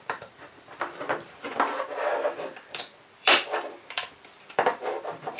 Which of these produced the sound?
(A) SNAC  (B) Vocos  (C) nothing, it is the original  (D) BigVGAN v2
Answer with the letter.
D